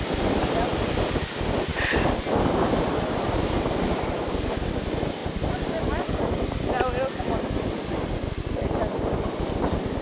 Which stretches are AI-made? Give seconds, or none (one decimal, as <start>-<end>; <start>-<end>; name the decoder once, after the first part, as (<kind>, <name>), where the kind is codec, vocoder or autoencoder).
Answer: none